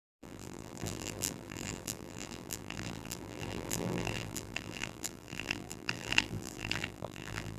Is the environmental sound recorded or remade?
remade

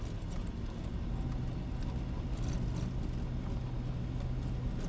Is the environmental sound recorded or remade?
recorded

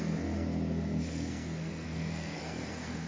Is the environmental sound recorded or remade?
remade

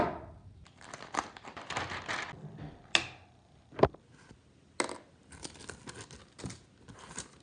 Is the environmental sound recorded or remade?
recorded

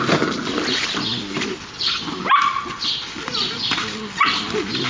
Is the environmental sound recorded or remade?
recorded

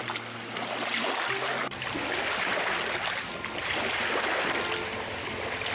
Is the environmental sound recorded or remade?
recorded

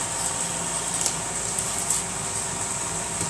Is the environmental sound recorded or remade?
recorded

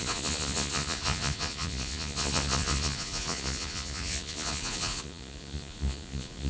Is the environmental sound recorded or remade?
remade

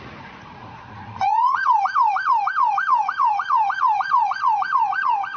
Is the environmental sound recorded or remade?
remade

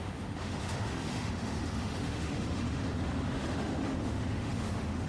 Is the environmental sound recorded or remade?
remade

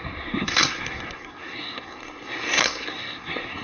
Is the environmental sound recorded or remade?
remade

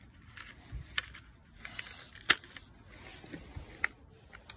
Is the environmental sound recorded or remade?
recorded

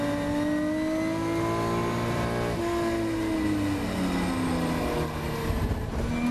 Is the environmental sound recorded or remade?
recorded